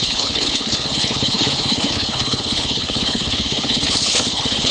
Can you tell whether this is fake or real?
fake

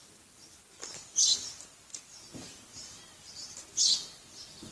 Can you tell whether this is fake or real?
real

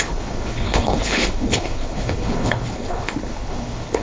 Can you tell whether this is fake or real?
fake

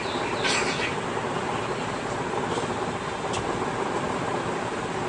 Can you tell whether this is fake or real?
real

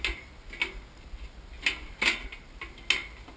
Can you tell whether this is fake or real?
real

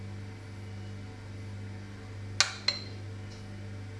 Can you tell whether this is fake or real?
real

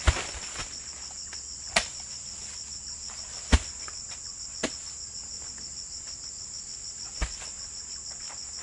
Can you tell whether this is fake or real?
real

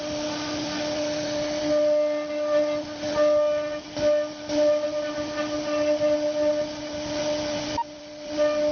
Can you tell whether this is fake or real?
real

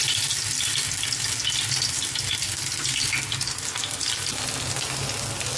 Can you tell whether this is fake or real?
real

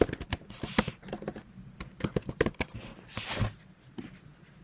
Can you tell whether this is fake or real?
real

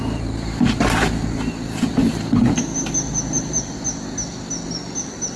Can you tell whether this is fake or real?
real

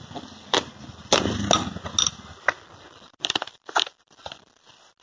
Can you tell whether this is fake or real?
real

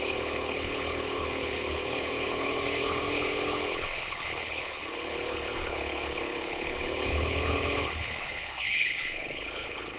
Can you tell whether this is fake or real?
fake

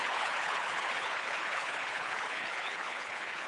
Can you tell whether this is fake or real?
fake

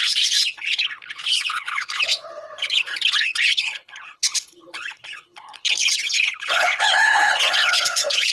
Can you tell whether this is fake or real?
fake